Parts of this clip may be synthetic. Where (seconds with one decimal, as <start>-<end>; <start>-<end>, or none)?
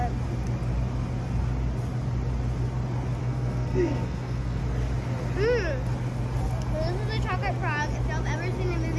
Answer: 3.2-4.6